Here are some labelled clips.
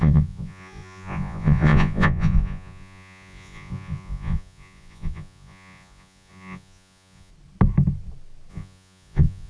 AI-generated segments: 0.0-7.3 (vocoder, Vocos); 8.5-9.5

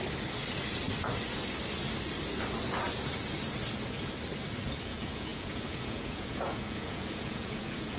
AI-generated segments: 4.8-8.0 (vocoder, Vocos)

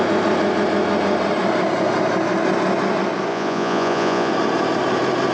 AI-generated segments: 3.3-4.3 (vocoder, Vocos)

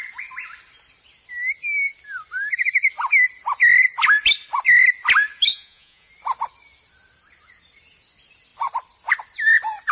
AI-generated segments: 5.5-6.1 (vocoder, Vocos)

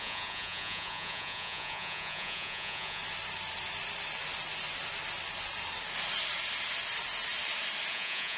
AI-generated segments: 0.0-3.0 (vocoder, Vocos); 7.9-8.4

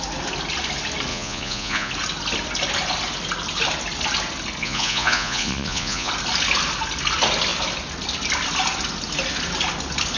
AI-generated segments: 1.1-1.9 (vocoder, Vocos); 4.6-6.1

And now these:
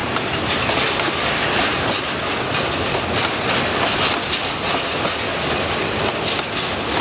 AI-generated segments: none

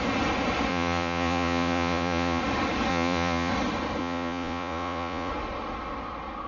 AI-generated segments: 0.7-2.4 (vocoder, Vocos); 2.9-3.5; 4.0-5.3